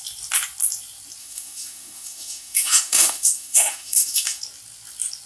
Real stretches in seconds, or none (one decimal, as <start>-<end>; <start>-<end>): 0.0-1.2; 4.4-5.3